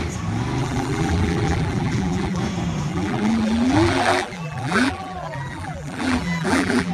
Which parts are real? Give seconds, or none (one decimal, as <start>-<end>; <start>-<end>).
0.0-0.6; 2.4-2.9